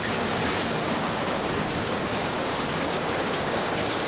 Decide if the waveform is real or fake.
fake